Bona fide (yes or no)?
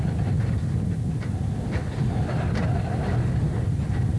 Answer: yes